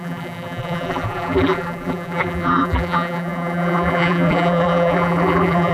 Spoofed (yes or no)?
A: yes